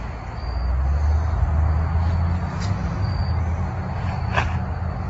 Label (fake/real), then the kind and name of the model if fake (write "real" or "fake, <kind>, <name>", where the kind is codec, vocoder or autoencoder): real